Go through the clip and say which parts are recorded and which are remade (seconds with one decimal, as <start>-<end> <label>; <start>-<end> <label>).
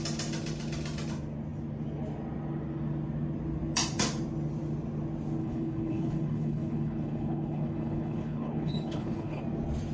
0.0-5.4 recorded; 5.4-9.4 remade; 9.4-9.9 recorded